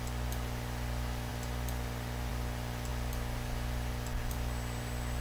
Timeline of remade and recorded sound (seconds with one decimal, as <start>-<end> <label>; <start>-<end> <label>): 0.0-5.2 recorded